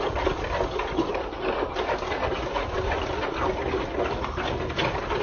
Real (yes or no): yes